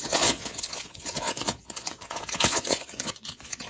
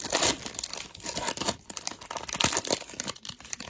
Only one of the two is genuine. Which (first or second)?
second